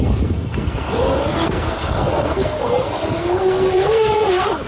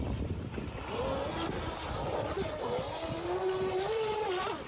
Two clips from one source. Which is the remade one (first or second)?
first